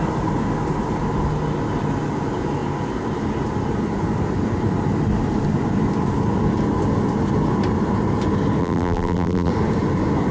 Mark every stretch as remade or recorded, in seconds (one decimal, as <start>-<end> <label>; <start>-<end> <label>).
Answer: 0.0-8.6 recorded; 8.6-9.5 remade; 9.5-10.3 recorded